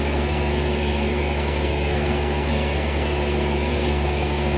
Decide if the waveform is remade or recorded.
remade